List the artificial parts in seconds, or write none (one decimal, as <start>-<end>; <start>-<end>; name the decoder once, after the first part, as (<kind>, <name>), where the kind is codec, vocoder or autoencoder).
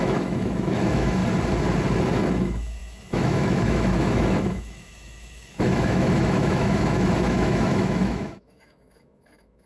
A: 0.0-1.2 (autoencoder, DAC-VAE); 2.4-9.7